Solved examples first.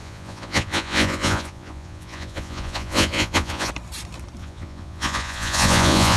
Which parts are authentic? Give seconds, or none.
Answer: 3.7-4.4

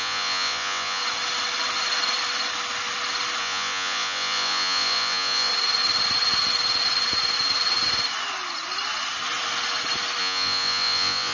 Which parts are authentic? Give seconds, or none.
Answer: 1.0-3.4; 5.5-10.2